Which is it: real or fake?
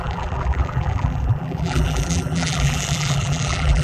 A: fake